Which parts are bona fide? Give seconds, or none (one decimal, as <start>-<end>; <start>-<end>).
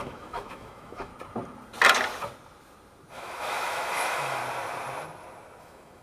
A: 1.1-3.1; 4.4-5.6